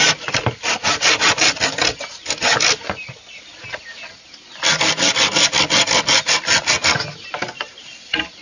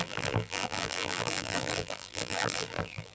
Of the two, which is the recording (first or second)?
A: first